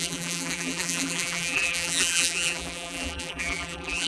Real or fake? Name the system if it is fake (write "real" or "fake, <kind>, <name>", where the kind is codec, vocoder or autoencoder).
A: fake, vocoder, BigVGAN v2